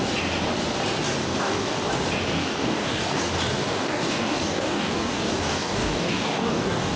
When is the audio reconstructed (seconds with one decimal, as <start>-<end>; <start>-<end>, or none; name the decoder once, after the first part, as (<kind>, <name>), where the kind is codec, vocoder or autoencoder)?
1.2-1.8 (codec, DAC); 2.3-3.2; 3.6-7.0